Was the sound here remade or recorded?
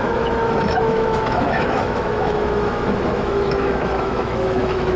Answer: remade